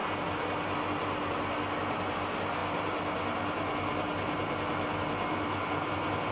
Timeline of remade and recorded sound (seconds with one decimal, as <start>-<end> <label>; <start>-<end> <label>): 0.0-6.3 recorded